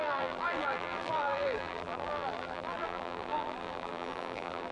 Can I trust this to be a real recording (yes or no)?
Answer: no